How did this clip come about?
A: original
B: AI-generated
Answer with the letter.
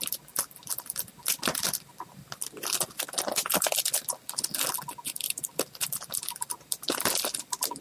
A